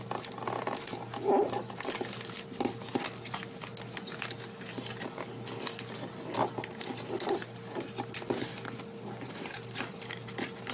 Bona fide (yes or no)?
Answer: yes